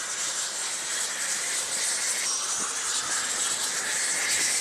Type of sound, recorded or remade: recorded